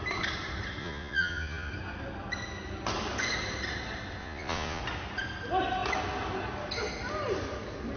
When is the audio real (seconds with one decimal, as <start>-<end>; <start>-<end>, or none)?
0.0-0.8; 1.7-4.2; 4.8-8.0